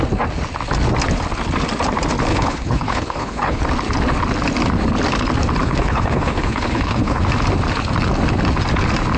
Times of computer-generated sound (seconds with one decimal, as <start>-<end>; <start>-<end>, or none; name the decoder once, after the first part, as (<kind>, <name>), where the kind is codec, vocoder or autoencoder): 2.3-3.6 (codec, HILCodec); 5.6-7.2